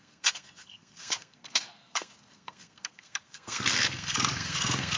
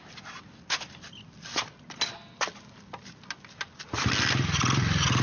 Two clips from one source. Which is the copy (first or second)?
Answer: first